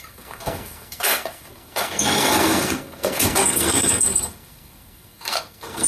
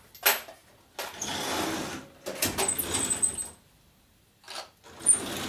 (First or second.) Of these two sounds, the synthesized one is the first